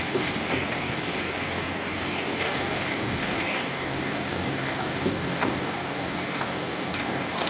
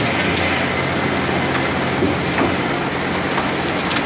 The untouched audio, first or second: second